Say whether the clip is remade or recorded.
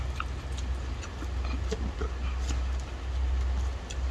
recorded